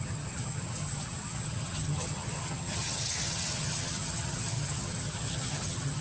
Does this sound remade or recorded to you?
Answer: remade